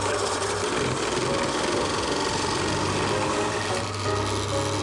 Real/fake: real